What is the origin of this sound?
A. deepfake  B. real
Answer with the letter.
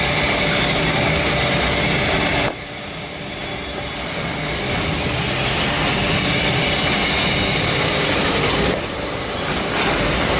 B